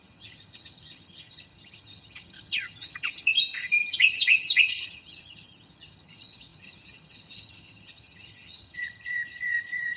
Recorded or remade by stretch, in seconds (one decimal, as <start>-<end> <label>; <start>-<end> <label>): 0.0-10.0 remade